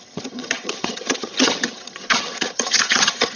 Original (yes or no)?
no